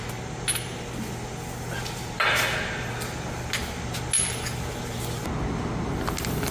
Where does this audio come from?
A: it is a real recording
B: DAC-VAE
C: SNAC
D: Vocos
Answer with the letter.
A